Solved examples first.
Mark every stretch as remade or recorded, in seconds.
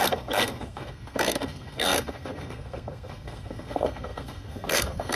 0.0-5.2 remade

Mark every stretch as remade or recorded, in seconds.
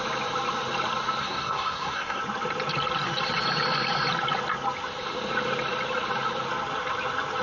0.0-1.2 recorded; 1.2-2.2 remade; 2.2-7.4 recorded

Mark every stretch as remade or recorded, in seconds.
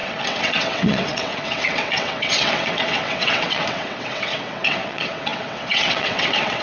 0.0-6.6 remade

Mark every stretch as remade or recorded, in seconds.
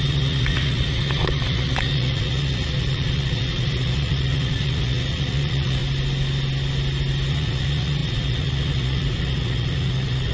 0.0-5.8 remade; 5.8-7.3 recorded; 7.3-10.3 remade